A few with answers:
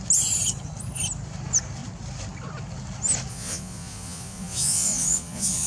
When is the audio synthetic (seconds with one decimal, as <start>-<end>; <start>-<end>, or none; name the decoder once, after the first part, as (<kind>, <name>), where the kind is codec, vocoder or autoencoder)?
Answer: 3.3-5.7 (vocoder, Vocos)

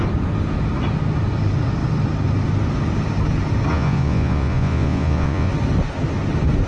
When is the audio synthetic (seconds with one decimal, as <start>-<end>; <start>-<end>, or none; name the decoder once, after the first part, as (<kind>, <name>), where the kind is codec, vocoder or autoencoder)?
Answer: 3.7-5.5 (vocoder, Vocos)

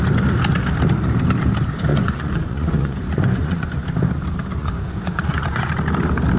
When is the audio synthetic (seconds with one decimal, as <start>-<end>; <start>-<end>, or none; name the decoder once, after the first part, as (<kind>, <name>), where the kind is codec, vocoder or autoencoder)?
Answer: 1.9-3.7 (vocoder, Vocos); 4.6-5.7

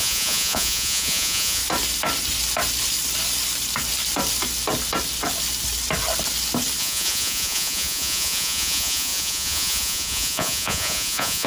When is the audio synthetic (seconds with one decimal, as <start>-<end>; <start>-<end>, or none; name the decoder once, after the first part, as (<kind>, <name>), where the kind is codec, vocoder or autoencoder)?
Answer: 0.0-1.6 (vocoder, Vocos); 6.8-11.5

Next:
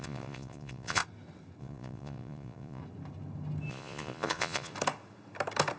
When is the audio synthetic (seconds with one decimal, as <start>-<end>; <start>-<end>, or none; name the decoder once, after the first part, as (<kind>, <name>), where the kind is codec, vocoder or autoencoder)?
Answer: 0.0-1.0 (vocoder, Vocos); 1.6-2.8; 3.7-4.7

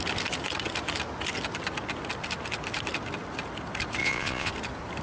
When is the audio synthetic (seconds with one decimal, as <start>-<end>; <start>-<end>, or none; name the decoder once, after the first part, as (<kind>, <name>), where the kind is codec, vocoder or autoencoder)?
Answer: 4.0-4.5 (vocoder, Vocos)